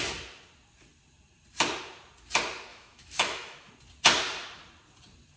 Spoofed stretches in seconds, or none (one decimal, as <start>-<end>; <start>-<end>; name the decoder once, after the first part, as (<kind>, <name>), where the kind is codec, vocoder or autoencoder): 2.7-3.7 (autoencoder, DAC-VAE)